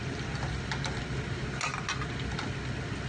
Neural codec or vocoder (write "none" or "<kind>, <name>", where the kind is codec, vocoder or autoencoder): none